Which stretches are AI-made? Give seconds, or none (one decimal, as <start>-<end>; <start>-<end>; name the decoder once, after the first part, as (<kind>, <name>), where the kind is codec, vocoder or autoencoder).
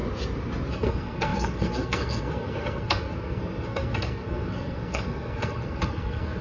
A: 0.7-6.4 (codec, SNAC)